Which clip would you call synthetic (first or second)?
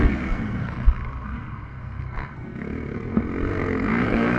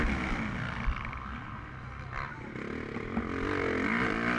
first